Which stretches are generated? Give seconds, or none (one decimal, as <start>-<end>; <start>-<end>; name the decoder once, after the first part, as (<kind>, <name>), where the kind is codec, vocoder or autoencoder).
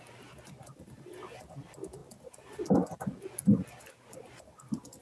none